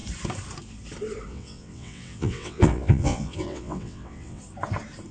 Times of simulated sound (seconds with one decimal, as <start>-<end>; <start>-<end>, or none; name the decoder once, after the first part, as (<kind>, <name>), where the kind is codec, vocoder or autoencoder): 1.3-4.4 (vocoder, WaveNeXt)